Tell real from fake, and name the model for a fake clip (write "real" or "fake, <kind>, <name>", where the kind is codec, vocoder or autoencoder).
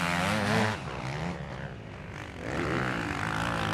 real